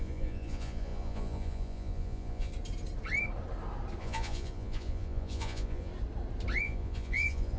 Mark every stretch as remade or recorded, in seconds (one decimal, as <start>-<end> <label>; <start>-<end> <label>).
0.0-2.5 remade; 2.5-4.0 recorded; 4.0-5.9 remade; 5.9-6.6 recorded; 6.6-7.6 remade